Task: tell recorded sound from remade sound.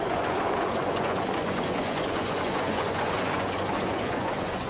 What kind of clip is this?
remade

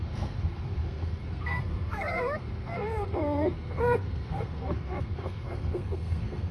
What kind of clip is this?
remade